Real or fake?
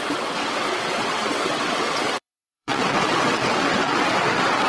fake